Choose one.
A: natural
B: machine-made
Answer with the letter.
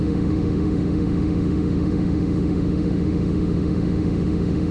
B